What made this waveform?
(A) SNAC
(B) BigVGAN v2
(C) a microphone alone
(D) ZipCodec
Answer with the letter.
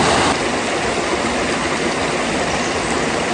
C